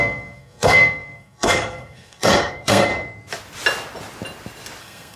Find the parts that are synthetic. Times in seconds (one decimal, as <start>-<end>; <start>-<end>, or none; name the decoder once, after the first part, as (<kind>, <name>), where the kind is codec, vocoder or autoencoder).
0.0-2.9 (codec, SNAC); 4.8-5.2